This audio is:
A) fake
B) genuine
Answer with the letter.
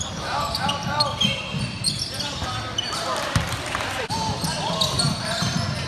B